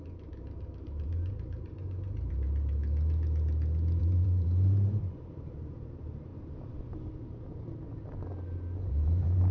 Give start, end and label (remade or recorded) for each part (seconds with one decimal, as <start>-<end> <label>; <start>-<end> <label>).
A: 0.0-2.8 remade; 2.8-4.0 recorded; 4.0-6.3 remade; 6.3-8.9 recorded; 8.9-9.5 remade